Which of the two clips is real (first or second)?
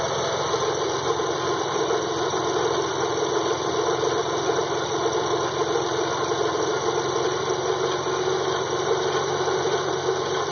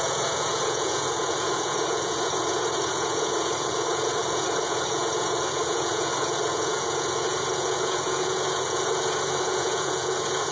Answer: first